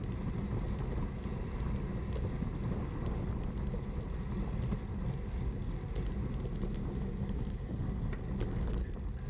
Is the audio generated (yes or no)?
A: no